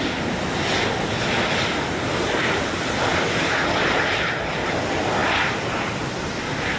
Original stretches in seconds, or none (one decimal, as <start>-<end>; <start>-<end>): 0.0-6.8